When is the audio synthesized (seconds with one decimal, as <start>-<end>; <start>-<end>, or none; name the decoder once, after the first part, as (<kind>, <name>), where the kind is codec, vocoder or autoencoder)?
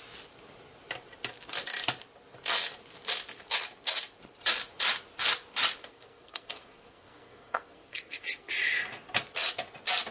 5.8-8.5 (codec, SNAC)